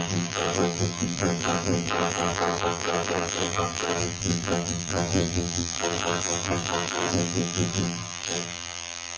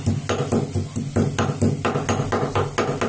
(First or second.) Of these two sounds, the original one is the second